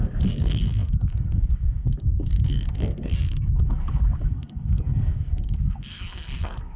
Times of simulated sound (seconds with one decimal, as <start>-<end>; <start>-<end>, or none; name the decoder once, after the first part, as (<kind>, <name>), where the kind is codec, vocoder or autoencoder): 0.0-6.8 (codec, SNAC)

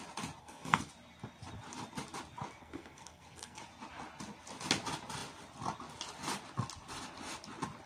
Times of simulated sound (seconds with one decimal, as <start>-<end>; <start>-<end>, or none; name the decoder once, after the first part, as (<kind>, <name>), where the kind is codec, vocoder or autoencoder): 0.4-0.9 (codec, SNAC); 2.6-3.6

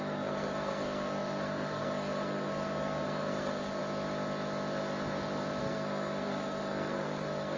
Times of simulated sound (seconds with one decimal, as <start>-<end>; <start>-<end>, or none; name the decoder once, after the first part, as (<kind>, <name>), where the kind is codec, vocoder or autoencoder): 0.0-3.8 (codec, SNAC); 5.6-7.6